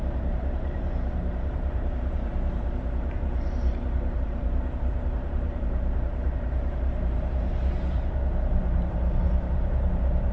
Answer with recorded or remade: remade